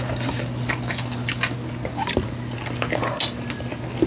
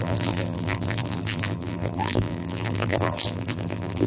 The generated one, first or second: second